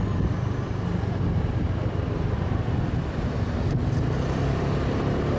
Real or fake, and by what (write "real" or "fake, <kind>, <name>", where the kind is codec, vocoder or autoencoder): real